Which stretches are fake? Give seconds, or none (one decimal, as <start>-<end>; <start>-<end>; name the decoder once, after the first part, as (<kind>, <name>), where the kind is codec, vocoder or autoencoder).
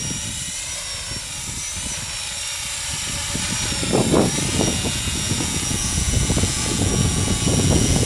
4.5-8.1 (vocoder, Vocos)